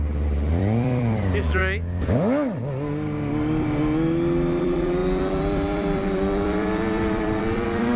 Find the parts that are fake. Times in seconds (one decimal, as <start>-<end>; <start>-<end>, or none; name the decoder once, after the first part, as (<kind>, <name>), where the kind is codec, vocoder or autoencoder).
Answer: 0.0-1.6 (vocoder, BigVGAN v2); 4.6-8.0